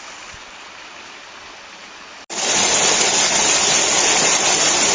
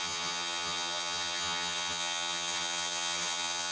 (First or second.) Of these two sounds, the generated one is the second